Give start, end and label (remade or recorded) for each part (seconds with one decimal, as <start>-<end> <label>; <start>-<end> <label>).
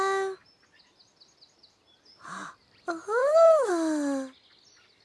0.0-3.2 recorded; 3.2-3.7 remade; 3.7-5.0 recorded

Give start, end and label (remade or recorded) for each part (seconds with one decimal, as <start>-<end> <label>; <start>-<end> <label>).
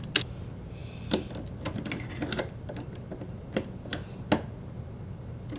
0.0-5.6 recorded